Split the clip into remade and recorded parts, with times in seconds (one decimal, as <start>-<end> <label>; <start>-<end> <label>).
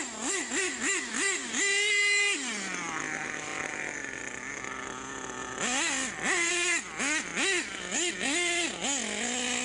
0.0-3.5 recorded; 3.5-4.2 remade; 4.2-5.4 recorded; 5.4-6.5 remade; 6.5-9.6 recorded